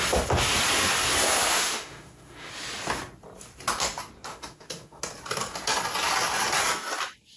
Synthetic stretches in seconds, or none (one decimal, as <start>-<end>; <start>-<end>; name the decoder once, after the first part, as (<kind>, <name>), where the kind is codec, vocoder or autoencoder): 1.5-2.5 (autoencoder, DAC-VAE); 4.3-5.0